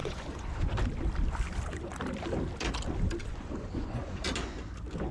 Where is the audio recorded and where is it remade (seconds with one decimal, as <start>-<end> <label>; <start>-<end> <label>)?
0.0-0.7 remade; 0.7-3.2 recorded; 3.2-4.2 remade; 4.2-5.1 recorded